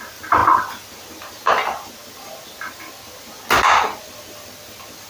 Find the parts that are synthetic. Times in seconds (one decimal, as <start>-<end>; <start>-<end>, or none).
none